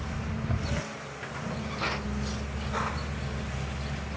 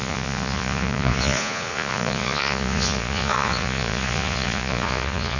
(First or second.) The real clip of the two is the first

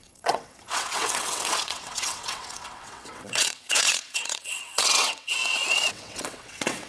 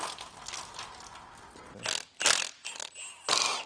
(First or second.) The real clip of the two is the second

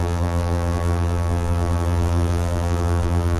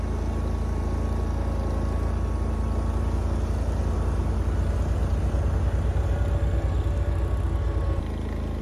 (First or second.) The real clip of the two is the second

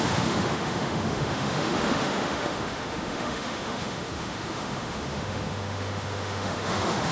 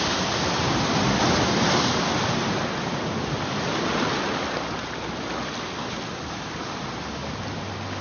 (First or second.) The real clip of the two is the second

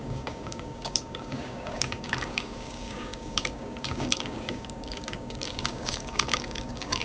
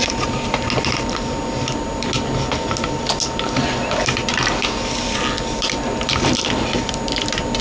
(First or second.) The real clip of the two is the second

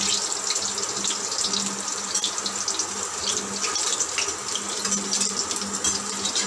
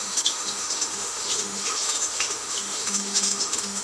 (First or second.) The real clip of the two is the first